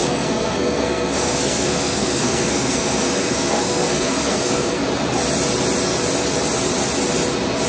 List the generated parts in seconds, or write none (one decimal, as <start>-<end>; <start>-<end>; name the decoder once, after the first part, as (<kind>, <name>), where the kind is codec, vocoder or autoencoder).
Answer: 0.0-4.8 (codec, SNAC)